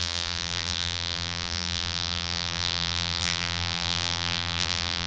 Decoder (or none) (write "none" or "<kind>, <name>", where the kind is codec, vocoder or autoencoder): vocoder, BigVGAN v2